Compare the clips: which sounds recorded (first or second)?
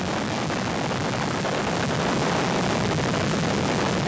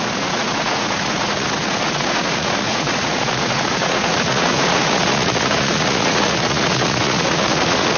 first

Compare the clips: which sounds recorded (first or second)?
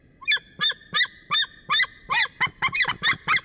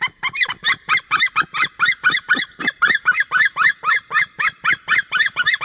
first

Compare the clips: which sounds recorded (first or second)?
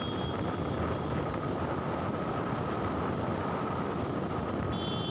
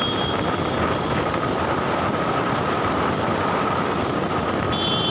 first